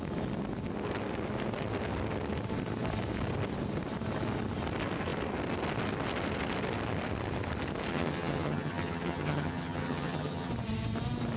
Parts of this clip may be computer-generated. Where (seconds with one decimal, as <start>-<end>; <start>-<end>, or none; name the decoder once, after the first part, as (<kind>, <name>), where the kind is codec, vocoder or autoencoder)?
7.9-10.5 (vocoder, HiFi-GAN)

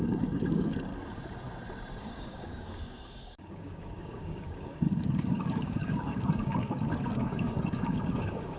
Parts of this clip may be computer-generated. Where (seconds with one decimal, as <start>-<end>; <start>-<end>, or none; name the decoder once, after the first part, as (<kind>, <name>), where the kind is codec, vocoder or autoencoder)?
0.0-0.9 (codec, DAC); 2.0-8.6

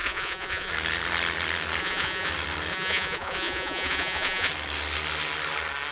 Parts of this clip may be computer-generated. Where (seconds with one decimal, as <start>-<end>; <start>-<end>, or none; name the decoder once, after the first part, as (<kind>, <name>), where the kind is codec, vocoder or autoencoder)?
0.0-0.7 (vocoder, Vocos); 1.8-2.3; 2.7-4.5

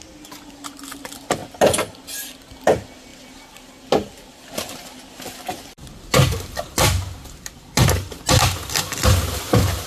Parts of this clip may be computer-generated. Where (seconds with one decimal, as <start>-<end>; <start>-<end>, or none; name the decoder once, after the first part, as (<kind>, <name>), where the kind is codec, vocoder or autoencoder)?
none

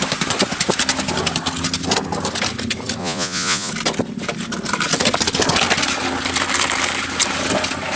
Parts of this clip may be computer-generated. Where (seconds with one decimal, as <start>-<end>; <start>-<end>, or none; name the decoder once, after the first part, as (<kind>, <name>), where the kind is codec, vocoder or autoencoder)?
3.0-3.7 (vocoder, Vocos)